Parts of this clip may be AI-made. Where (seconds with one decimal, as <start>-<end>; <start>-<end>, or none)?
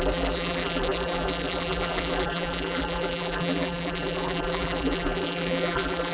0.0-6.1